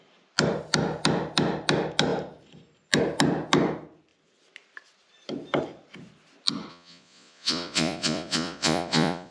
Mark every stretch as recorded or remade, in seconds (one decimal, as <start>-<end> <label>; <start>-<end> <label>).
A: 0.0-6.7 recorded; 6.7-9.3 remade